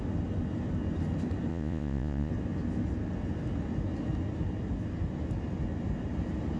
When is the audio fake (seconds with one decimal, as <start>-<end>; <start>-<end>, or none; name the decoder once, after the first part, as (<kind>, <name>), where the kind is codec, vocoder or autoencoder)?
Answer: 1.5-2.3 (vocoder, Vocos)